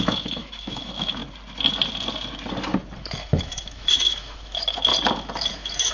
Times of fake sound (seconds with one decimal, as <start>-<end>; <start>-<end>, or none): 0.0-1.2; 3.0-4.9; 5.5-5.9

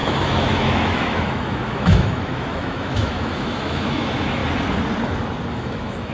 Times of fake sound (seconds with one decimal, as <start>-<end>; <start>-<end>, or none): 0.0-4.4; 5.5-6.1

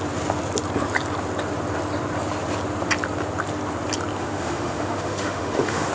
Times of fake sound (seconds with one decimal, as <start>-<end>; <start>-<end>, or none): 4.2-5.9

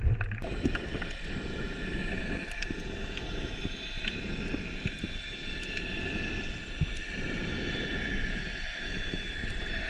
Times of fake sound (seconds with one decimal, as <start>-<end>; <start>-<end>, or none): none

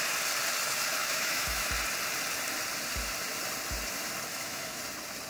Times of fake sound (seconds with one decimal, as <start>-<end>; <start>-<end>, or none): 1.0-1.7; 4.3-4.8